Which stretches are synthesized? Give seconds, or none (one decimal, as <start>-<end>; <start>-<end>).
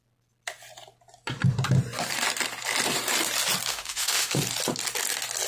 3.7-4.4